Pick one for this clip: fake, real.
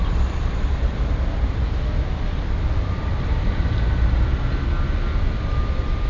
real